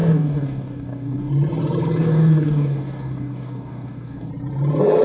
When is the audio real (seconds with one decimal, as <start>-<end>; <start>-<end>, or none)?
1.3-2.0; 4.3-5.0